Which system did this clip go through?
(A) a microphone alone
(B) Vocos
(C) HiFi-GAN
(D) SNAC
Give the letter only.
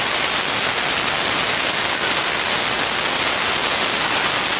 A